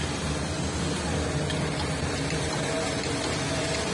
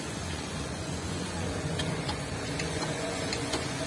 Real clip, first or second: first